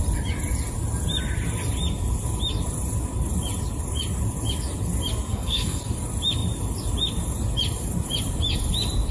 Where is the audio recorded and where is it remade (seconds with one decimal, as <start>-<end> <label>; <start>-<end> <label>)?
0.0-5.3 recorded; 5.3-5.8 remade; 5.8-9.1 recorded